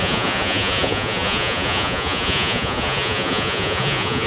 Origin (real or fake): fake